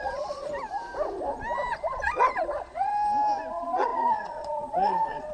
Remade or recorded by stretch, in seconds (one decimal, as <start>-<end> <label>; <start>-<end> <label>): 0.0-0.5 remade; 0.5-1.7 recorded; 1.7-2.9 remade; 2.9-3.5 recorded; 3.5-5.3 remade

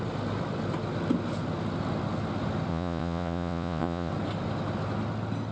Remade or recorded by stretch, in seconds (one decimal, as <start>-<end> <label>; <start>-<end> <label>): 0.0-2.7 recorded; 2.7-4.1 remade; 4.1-5.5 recorded

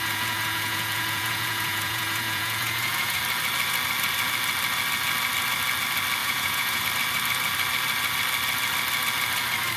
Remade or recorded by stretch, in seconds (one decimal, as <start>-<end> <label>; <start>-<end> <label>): 0.0-3.2 remade; 3.2-6.2 recorded; 6.2-6.8 remade; 6.8-9.8 recorded

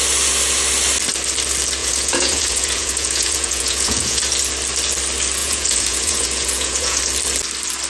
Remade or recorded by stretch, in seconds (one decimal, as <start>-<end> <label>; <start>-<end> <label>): 0.0-1.8 recorded; 1.8-4.2 remade; 4.2-5.4 recorded; 5.4-7.0 remade; 7.0-7.9 recorded